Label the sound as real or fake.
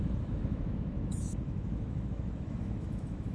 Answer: fake